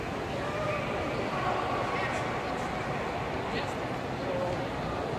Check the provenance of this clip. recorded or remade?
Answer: recorded